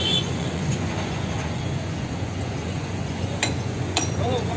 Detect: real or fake fake